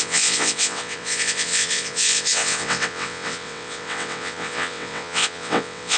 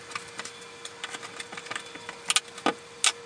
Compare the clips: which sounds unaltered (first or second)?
second